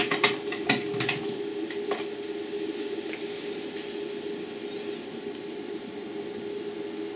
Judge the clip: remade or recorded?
recorded